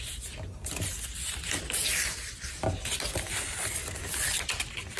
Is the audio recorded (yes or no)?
yes